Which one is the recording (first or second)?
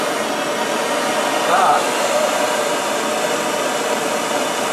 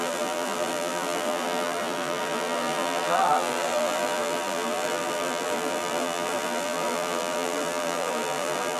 first